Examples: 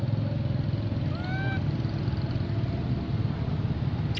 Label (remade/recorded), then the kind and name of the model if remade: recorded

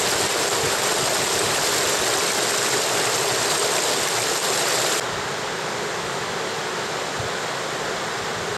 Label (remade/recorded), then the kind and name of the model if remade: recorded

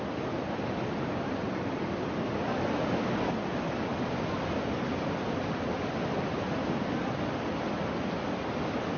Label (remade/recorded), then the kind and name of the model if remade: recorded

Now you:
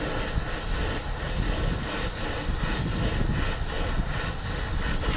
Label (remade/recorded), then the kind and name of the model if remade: recorded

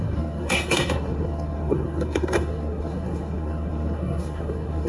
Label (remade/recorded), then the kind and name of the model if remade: remade, codec, SNAC